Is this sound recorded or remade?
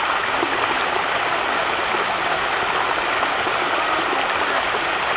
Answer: recorded